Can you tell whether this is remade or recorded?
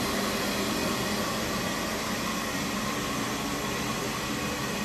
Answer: recorded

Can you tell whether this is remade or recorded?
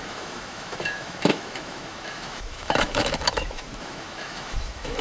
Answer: remade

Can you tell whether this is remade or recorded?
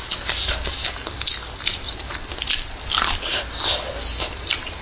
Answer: recorded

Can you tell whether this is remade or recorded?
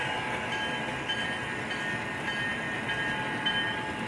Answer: recorded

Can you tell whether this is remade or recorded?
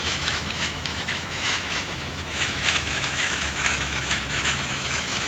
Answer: remade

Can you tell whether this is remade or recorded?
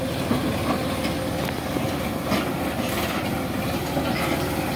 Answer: recorded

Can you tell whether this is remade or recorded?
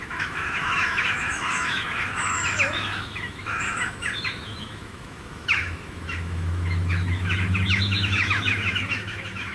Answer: remade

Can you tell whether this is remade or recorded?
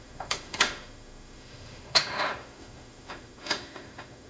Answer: remade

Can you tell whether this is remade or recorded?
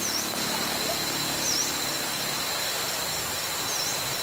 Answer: recorded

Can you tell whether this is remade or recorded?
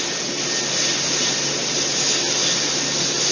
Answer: recorded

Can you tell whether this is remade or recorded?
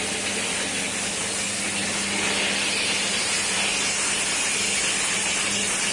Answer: recorded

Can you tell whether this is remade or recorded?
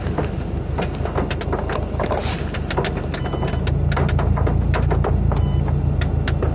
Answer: recorded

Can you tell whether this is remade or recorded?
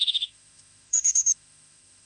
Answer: remade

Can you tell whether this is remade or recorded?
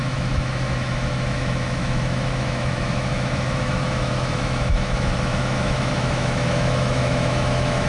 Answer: remade